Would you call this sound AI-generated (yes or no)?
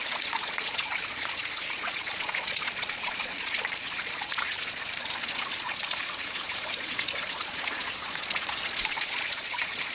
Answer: yes